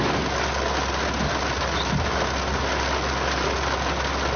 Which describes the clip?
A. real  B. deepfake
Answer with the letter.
A